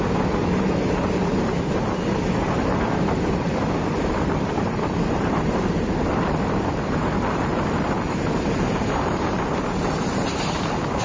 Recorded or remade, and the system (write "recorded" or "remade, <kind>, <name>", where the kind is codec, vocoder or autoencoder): remade, vocoder, BigVGAN v2